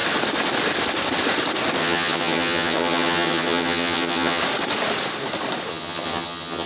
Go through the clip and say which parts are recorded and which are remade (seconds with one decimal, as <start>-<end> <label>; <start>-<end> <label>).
0.0-1.8 recorded; 1.8-4.4 remade; 4.4-5.7 recorded; 5.7-6.7 remade